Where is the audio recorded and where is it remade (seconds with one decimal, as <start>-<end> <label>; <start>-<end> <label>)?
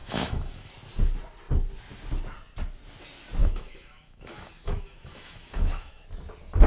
0.0-0.7 remade; 0.7-3.4 recorded; 3.4-6.0 remade; 6.0-6.7 recorded